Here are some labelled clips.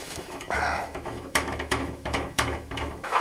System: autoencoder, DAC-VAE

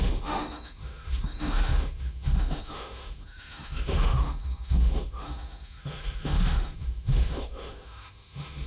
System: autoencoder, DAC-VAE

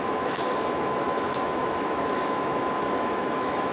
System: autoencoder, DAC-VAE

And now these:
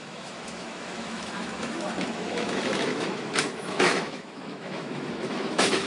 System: autoencoder, DAC-VAE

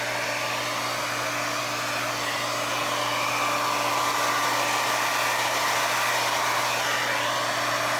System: none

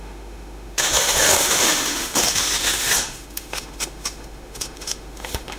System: autoencoder, DAC-VAE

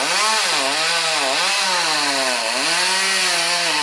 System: none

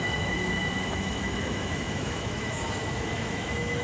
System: autoencoder, DAC-VAE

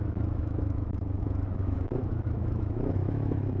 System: autoencoder, DAC-VAE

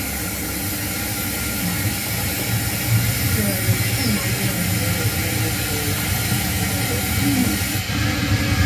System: none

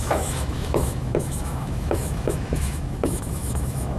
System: autoencoder, DAC-VAE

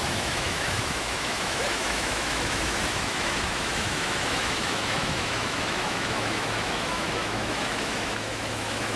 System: autoencoder, DAC-VAE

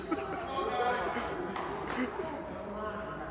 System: none